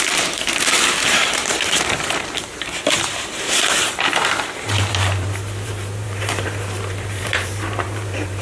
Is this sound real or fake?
fake